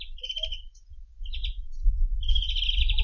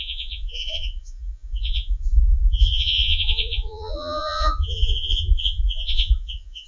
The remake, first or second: second